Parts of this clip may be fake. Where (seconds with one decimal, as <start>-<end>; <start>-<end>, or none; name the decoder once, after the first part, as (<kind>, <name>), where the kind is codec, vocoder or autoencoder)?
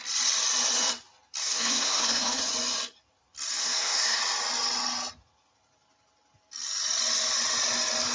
1.4-2.4 (codec, SNAC); 3.6-4.2